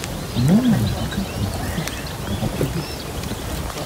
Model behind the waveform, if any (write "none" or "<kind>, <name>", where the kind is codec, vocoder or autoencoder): none